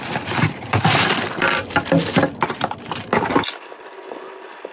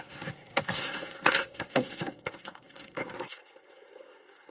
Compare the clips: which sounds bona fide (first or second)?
first